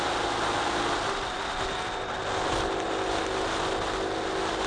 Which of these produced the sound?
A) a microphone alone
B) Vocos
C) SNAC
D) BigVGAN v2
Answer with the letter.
A